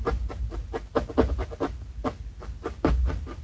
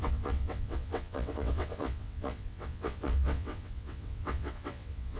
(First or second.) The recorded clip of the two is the first